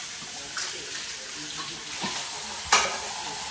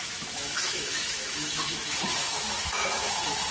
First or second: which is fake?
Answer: second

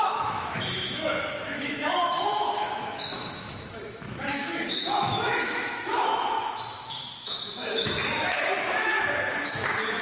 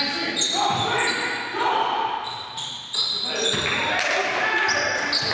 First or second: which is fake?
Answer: first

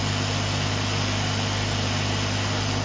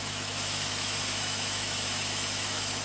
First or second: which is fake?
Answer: second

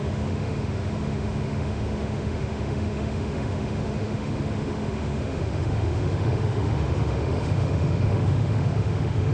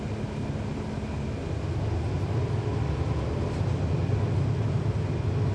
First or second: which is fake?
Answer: first